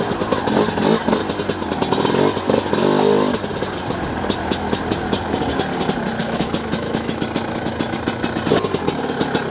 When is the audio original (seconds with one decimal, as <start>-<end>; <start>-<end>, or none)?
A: 0.0-6.2; 7.2-9.5